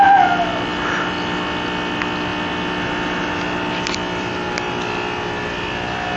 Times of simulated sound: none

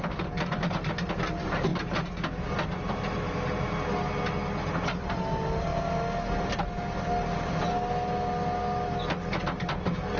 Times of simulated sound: none

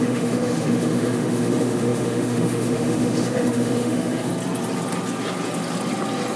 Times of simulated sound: 0.0-4.3 (autoencoder, DAC-VAE)

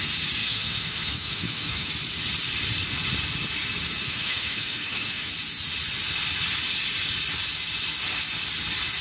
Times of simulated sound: 0.4-1.9 (autoencoder, DAC-VAE); 4.0-5.3